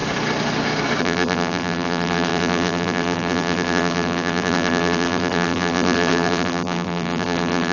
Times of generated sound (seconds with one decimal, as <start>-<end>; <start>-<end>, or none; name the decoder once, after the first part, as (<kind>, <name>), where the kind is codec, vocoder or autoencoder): 1.0-7.7 (vocoder, BigVGAN v2)